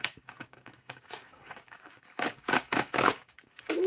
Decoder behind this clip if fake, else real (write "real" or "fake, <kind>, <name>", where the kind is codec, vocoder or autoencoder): fake, codec, DAC